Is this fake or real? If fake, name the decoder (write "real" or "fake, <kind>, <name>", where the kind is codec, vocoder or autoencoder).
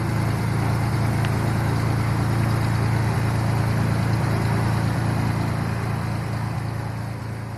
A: real